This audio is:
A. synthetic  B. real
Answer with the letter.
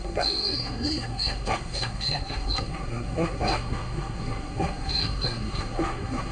A